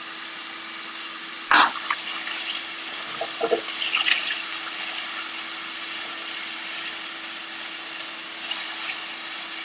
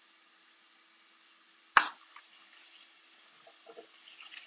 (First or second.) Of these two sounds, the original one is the second